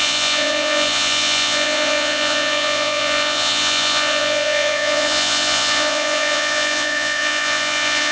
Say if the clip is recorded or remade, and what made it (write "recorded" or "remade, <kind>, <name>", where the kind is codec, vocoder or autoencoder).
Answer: remade, vocoder, Vocos